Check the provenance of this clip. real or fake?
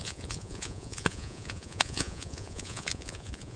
fake